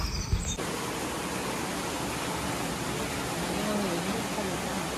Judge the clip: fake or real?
real